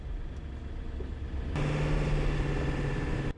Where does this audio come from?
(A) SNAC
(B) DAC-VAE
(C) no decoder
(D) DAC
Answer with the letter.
C